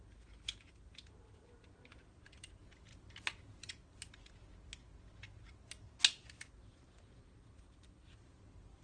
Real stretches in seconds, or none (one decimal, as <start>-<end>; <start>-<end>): 0.0-8.8